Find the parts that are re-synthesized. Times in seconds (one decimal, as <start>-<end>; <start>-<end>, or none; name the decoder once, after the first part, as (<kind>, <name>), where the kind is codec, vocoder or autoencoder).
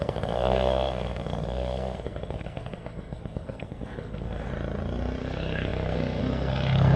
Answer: 0.0-4.5 (codec, SNAC); 5.2-7.0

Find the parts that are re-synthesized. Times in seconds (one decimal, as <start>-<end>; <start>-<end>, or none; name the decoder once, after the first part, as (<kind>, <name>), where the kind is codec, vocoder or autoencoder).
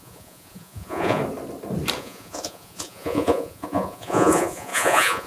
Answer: 0.0-1.2 (vocoder, Vocos); 2.0-5.3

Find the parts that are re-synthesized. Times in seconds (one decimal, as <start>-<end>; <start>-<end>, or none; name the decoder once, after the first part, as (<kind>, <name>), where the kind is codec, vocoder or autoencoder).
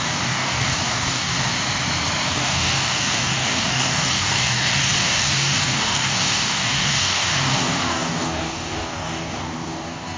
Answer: 0.0-1.5 (codec, DAC); 2.3-10.2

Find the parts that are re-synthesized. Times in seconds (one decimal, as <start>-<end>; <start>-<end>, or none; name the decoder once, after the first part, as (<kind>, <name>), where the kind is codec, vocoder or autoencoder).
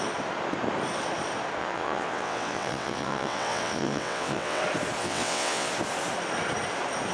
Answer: 1.6-4.6 (vocoder, WaveNeXt); 5.0-5.7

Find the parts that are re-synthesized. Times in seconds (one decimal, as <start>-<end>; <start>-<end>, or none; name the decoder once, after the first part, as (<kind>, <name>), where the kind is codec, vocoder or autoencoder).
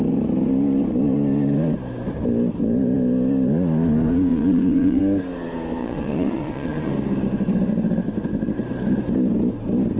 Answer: 4.3-5.0 (vocoder, Vocos); 5.8-6.9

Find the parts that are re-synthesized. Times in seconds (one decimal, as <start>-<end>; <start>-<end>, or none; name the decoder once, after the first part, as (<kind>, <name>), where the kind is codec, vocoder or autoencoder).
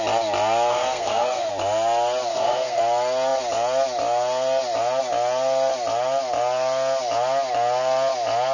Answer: 0.7-1.5 (codec, SNAC); 2.3-2.8